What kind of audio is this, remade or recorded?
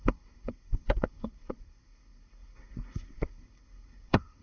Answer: remade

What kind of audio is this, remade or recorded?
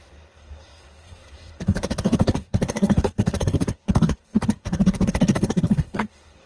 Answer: remade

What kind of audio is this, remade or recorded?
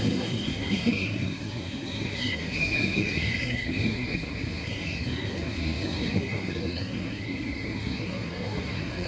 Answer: remade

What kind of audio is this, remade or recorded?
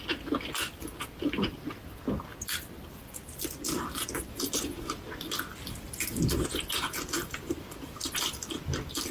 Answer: recorded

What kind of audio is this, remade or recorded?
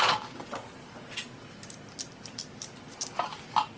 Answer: recorded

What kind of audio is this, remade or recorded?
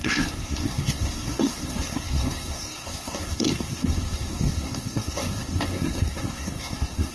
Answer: remade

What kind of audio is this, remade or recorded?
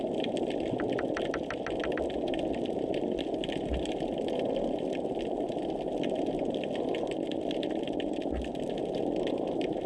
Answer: recorded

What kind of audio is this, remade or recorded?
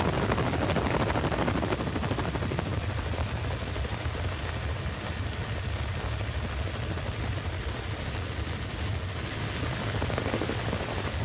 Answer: recorded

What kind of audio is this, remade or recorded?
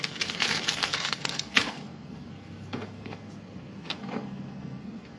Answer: remade